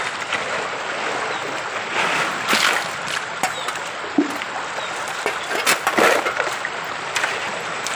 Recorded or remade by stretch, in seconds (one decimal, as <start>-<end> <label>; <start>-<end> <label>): 0.0-8.0 recorded